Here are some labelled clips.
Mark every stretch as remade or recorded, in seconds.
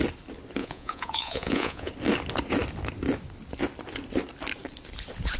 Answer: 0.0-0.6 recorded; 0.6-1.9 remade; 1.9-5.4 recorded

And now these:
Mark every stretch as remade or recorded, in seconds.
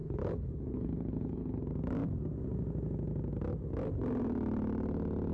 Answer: 0.0-1.6 remade; 1.6-5.3 recorded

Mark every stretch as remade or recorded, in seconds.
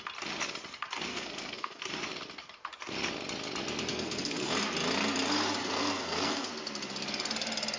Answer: 0.0-1.1 recorded; 1.1-1.8 remade; 1.8-3.9 recorded; 3.9-4.5 remade; 4.5-5.6 recorded; 5.6-6.5 remade; 6.5-7.8 recorded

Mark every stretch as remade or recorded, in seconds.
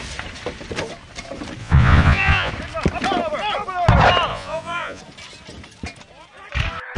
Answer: 0.0-1.6 recorded; 1.6-2.5 remade; 2.5-4.3 recorded; 4.3-5.0 remade; 5.0-7.0 recorded